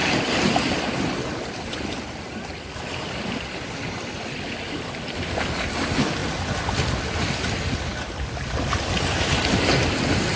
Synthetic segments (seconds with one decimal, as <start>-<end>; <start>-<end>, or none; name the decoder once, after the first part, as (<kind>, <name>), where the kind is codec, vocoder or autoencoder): none